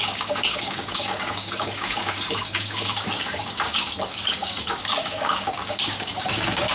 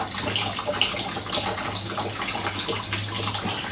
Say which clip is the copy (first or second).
first